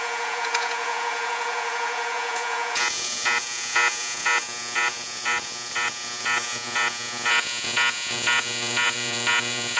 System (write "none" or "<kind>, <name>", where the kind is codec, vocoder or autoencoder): vocoder, Vocos